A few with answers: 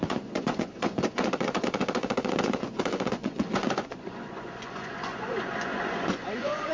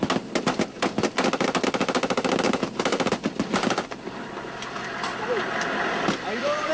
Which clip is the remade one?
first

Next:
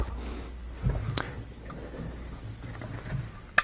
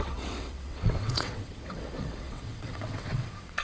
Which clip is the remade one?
second